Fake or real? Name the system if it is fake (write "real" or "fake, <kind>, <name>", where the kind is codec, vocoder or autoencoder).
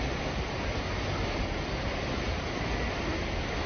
real